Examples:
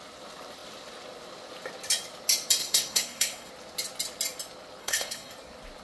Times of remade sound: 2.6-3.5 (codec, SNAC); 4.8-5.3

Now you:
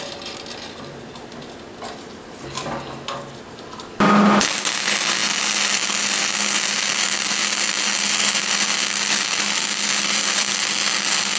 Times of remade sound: none

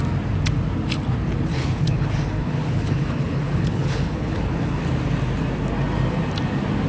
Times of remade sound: 1.5-4.8 (codec, HILCodec)

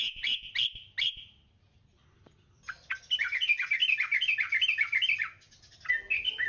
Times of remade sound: 0.0-0.5 (vocoder, Vocos)